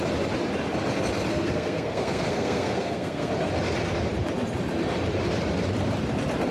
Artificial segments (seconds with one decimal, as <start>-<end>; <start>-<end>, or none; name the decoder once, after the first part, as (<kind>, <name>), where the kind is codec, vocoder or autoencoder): 1.3-3.3 (codec, SNAC)

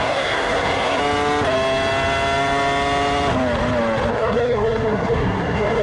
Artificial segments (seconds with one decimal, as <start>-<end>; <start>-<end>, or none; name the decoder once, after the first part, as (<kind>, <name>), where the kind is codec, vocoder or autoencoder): 0.0-1.0 (codec, SNAC); 4.1-5.8

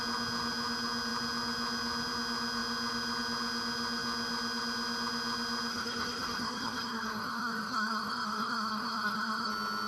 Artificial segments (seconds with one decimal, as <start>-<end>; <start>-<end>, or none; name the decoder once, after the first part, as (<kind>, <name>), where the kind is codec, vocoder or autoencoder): 5.7-9.5 (codec, SNAC)

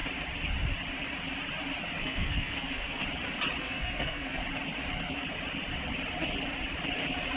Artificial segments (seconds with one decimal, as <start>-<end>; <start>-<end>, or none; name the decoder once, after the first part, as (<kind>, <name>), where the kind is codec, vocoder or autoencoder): 2.0-3.0 (codec, SNAC); 3.6-4.4

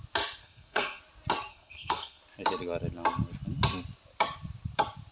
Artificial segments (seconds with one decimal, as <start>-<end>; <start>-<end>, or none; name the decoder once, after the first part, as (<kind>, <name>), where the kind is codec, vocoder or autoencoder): 0.4-1.0 (codec, SNAC); 1.5-2.2